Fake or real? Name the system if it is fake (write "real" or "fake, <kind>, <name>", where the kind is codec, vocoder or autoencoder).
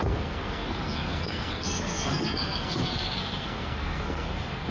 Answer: fake, codec, SNAC